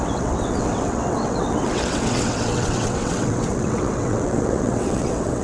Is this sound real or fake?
fake